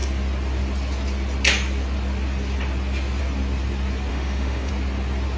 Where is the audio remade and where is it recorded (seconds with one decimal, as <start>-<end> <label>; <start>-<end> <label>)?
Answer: 0.0-4.1 recorded; 4.1-4.7 remade; 4.7-5.4 recorded